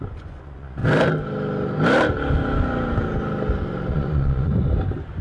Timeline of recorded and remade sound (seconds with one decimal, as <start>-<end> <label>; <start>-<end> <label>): 0.0-0.8 remade; 0.8-3.9 recorded; 3.9-4.5 remade; 4.5-5.2 recorded